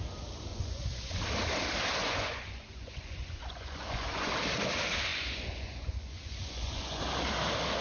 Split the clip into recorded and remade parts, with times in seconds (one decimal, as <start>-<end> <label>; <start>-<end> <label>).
0.0-0.5 recorded; 0.5-1.2 remade; 1.2-2.0 recorded; 2.0-4.3 remade; 4.3-5.1 recorded; 5.1-7.0 remade; 7.0-7.8 recorded